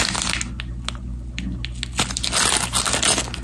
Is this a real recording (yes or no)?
yes